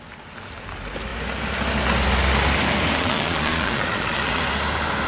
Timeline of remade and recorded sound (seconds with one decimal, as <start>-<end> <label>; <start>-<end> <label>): 0.0-3.0 recorded; 3.0-4.4 remade; 4.4-5.1 recorded